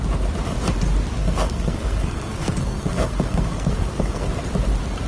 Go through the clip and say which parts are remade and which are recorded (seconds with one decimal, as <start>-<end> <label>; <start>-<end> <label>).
0.0-1.2 recorded; 1.2-4.3 remade; 4.3-5.1 recorded